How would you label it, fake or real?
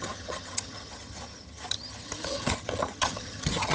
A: fake